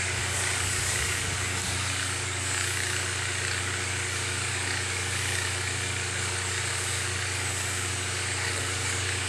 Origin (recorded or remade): remade